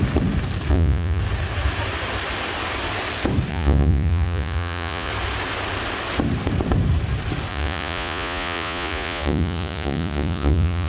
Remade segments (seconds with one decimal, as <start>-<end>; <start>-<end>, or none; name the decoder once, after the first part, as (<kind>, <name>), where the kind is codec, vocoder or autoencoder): 0.7-1.2 (vocoder, Vocos); 3.5-5.1; 7.5-10.9